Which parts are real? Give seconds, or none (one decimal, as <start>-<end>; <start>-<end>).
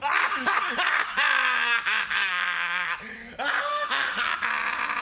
0.0-2.3; 2.9-3.7; 4.2-5.0